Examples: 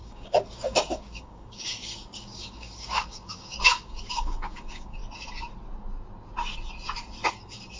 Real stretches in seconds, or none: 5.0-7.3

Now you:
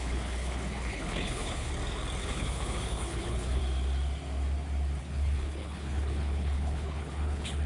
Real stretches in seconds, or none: 1.7-2.2; 3.6-5.0

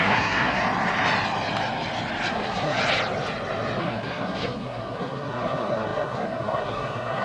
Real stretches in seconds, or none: 0.6-2.3; 2.8-3.8

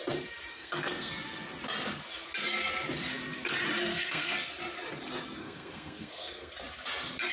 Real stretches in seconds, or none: 0.0-0.5; 1.1-3.9; 4.5-5.4; 6.5-7.3

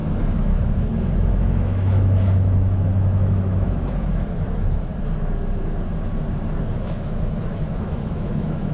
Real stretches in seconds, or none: 4.9-6.6

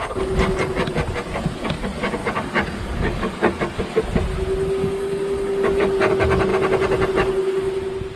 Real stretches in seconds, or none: 0.0-2.2; 3.8-4.8; 5.8-8.2

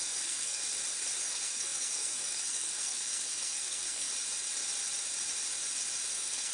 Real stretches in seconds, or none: 0.6-1.2; 4.1-6.1

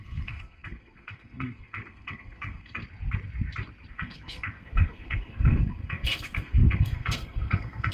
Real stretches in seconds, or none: 2.8-3.9